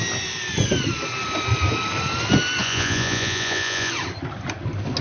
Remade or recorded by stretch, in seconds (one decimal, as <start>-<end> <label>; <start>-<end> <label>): 0.0-2.6 recorded; 2.6-3.9 remade; 3.9-5.0 recorded